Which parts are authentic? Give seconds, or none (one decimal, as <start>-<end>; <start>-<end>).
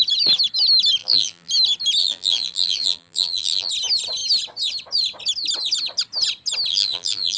0.0-1.0; 1.5-2.0; 3.7-6.7